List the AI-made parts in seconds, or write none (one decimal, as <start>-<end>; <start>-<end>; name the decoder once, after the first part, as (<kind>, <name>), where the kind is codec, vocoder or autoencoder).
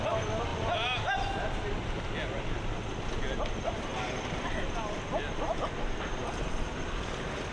0.5-1.0 (vocoder, BigVGAN v2); 3.9-4.5